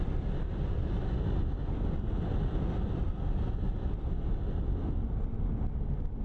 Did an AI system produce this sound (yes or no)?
no